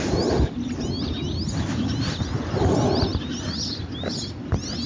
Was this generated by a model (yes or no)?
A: no